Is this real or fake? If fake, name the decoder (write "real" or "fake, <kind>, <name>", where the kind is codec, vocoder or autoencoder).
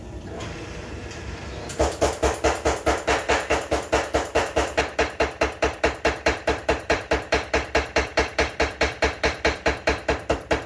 fake, vocoder, BigVGAN v2